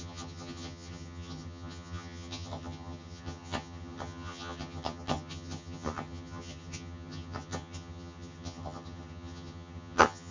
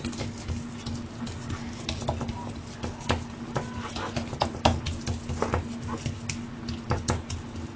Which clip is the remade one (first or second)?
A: first